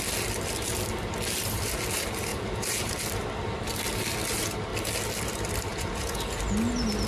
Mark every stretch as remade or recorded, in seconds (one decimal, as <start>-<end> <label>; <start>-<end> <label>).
0.0-2.3 recorded; 2.3-2.9 remade; 2.9-5.7 recorded; 5.7-6.4 remade; 6.4-7.1 recorded